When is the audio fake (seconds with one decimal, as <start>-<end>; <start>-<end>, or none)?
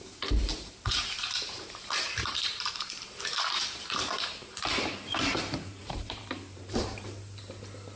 0.5-4.6; 5.8-7.0